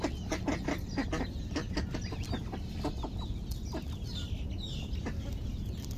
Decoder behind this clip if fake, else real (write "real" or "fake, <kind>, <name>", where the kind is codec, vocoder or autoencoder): real